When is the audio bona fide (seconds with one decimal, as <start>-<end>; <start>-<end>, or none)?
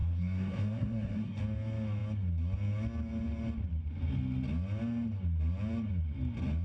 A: 1.4-6.6